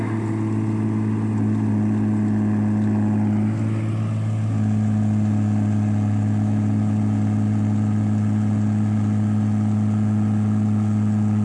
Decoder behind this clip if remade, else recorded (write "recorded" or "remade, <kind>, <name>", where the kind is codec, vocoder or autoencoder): recorded